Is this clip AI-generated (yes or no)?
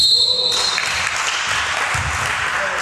no